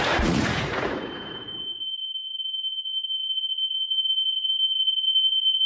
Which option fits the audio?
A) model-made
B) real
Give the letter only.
A